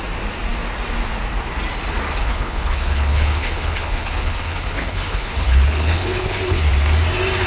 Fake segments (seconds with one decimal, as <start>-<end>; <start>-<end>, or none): 2.2-6.7